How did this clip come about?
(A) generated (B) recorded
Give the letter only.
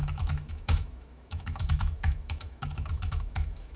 A